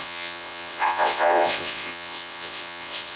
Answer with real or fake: fake